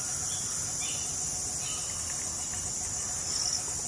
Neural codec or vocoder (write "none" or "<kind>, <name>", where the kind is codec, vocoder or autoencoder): none